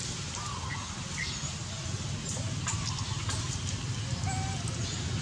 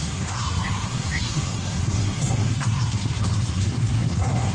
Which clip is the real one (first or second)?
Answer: first